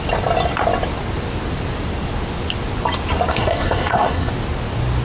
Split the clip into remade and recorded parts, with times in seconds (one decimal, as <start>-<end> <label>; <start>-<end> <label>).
0.0-3.3 recorded; 3.3-4.3 remade; 4.3-5.0 recorded